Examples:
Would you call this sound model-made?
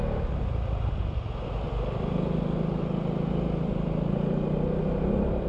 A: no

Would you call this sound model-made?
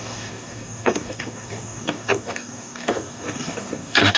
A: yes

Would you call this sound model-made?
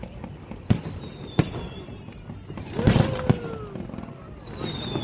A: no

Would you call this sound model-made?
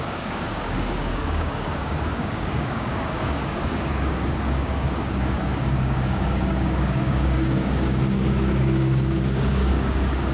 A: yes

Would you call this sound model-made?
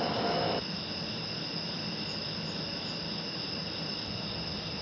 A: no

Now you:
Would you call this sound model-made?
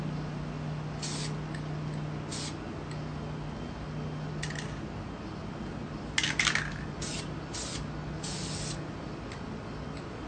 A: no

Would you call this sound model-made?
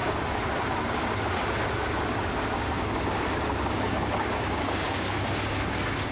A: yes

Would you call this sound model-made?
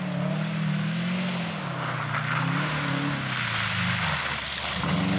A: no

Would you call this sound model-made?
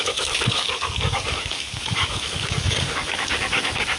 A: yes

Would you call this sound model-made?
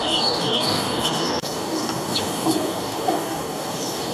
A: yes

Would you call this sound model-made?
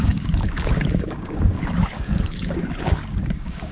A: yes